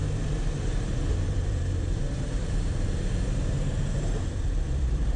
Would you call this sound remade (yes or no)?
yes